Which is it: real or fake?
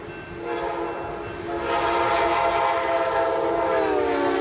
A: real